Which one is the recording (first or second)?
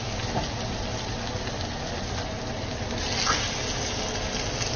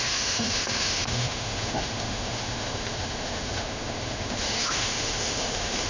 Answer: first